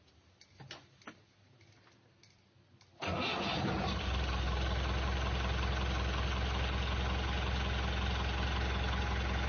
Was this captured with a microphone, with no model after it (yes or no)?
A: yes